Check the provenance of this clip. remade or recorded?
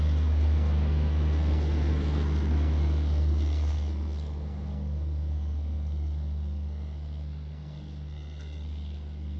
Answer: remade